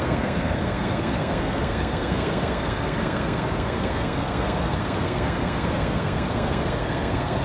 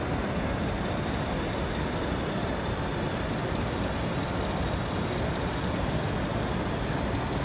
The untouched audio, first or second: second